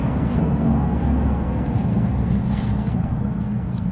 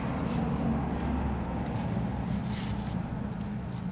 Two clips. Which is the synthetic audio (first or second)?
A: first